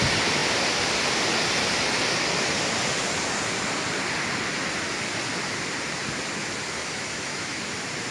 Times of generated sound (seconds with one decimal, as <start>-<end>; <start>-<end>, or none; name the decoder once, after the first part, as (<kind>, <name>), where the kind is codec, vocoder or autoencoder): 6.8-7.6 (autoencoder, DAC-VAE)